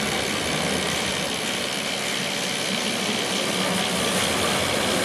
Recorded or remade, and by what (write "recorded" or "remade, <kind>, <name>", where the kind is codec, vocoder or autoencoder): recorded